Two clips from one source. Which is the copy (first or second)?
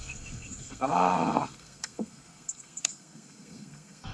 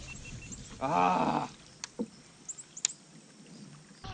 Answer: first